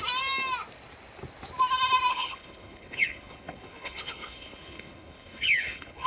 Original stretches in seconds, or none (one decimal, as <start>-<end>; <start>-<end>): 0.0-2.1